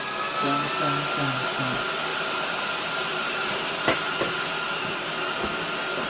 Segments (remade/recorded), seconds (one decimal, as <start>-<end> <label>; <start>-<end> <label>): 0.0-2.1 recorded; 2.1-5.4 remade; 5.4-6.1 recorded